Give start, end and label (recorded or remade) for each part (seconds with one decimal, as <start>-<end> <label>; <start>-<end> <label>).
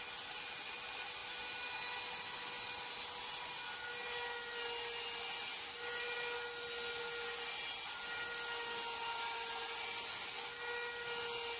0.0-11.6 recorded